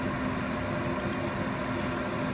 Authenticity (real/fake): real